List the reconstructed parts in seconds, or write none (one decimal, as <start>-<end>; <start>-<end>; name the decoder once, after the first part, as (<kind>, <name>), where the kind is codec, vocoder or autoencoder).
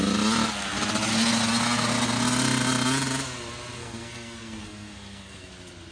3.8-5.5 (codec, SNAC)